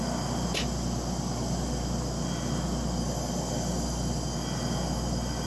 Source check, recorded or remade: recorded